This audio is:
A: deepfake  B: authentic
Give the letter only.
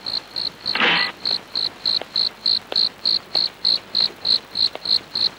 B